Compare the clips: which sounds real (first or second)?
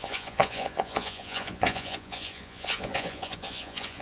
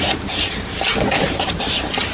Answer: second